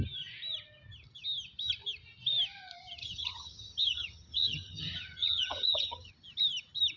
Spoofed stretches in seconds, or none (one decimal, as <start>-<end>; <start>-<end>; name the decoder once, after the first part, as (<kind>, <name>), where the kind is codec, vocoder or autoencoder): 3.0-6.1 (vocoder, HiFi-GAN)